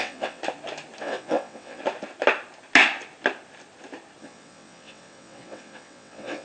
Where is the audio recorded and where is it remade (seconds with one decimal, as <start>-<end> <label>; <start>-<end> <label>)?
0.0-0.4 remade; 0.4-1.0 recorded; 1.0-1.8 remade; 1.8-4.2 recorded; 4.2-6.4 remade